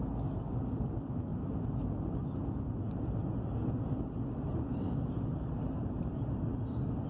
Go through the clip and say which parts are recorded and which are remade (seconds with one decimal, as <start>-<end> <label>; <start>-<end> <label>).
0.0-7.1 recorded